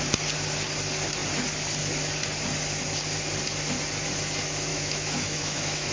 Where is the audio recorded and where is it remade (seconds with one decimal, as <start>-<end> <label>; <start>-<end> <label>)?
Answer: 0.0-4.7 recorded; 4.7-5.9 remade

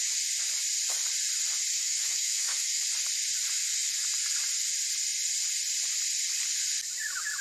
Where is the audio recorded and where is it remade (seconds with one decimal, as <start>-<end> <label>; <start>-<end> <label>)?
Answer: 0.0-1.7 recorded; 1.7-2.8 remade; 2.8-7.4 recorded

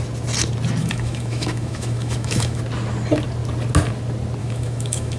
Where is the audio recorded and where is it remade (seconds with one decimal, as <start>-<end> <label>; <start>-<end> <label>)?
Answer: 0.0-0.8 recorded; 0.8-2.6 remade; 2.6-4.4 recorded; 4.4-5.2 remade

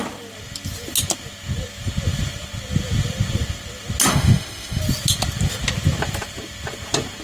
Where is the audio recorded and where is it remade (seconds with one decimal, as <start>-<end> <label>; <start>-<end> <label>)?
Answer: 0.0-4.1 recorded; 4.1-4.8 remade; 4.8-7.2 recorded

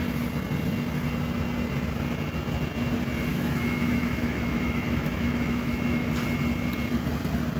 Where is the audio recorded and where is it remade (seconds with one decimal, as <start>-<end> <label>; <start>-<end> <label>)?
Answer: 0.0-3.3 recorded; 3.3-6.1 remade; 6.1-7.6 recorded